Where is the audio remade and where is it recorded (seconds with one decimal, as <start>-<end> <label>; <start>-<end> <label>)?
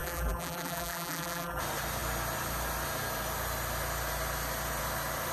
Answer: 0.0-1.6 remade; 1.6-5.3 recorded